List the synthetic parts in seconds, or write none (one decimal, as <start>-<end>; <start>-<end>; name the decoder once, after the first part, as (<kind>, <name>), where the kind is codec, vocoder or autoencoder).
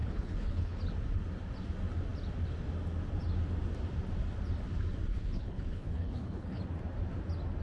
0.0-0.8 (codec, HILCodec); 5.1-6.6